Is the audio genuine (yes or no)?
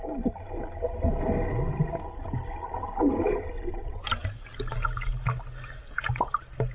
yes